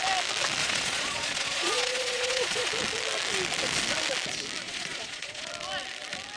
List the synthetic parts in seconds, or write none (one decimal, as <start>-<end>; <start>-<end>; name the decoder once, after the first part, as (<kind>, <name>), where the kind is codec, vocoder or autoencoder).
0.6-2.7 (vocoder, Vocos); 4.6-5.5